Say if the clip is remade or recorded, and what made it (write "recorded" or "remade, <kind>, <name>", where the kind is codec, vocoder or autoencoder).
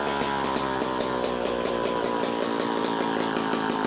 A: recorded